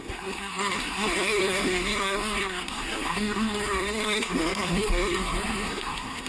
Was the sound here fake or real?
fake